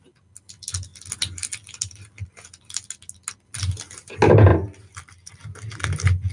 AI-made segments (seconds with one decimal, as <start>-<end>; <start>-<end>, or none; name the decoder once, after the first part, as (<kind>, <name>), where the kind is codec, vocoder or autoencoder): none